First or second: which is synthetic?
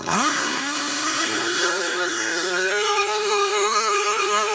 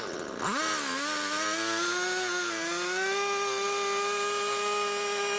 first